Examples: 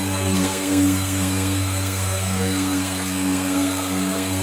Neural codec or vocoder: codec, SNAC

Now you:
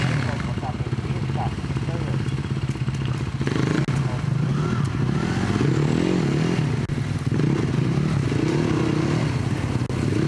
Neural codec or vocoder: none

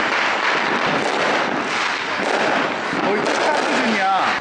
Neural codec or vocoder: none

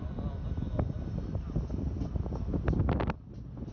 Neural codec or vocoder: none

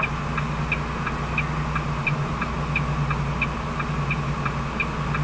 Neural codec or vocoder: none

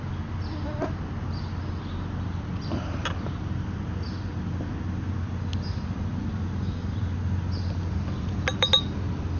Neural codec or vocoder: none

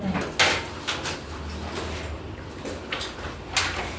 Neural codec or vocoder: none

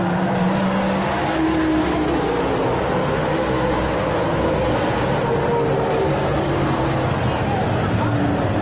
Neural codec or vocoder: none